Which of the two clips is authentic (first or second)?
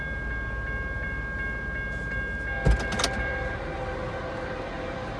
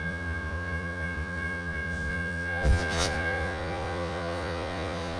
first